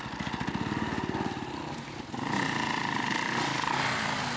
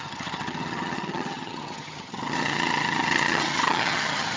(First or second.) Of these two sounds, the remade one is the second